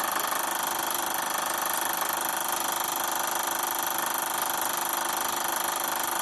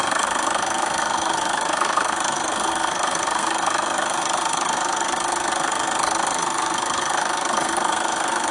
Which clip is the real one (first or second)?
first